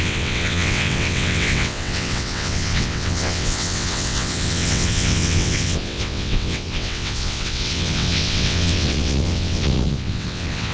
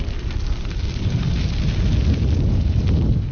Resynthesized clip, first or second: first